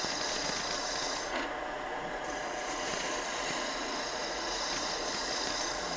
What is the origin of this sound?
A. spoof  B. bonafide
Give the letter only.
A